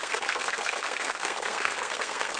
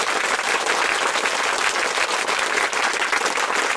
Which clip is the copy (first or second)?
first